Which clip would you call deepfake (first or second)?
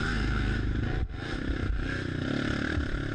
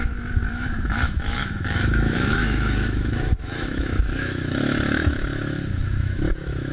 second